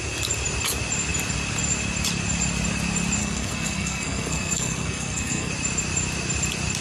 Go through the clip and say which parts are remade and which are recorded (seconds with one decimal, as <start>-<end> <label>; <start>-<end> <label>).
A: 0.0-3.2 recorded; 3.2-5.5 remade; 5.5-6.8 recorded

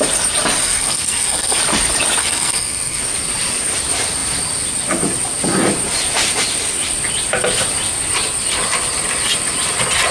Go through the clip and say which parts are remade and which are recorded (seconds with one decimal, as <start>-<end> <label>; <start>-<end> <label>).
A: 0.0-0.6 recorded; 0.6-1.6 remade; 1.6-2.2 recorded; 2.2-3.0 remade; 3.0-10.1 recorded

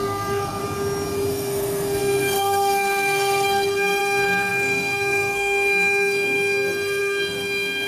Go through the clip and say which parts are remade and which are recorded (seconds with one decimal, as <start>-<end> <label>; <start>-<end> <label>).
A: 0.0-0.6 remade; 0.6-1.3 recorded; 1.3-7.9 remade

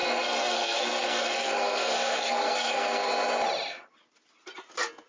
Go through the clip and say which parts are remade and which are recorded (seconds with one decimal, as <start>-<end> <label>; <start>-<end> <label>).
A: 0.0-3.1 remade; 3.1-5.1 recorded